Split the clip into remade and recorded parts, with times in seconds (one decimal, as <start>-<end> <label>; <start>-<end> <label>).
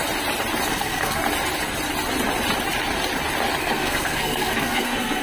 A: 0.0-0.7 recorded; 0.7-1.2 remade; 1.2-3.6 recorded; 3.6-5.2 remade